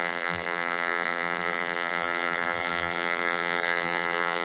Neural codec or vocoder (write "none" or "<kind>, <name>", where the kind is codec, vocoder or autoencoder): vocoder, BigVGAN v2